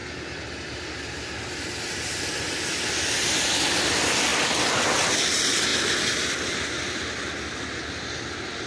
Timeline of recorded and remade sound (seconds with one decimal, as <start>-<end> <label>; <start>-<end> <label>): 0.0-8.7 recorded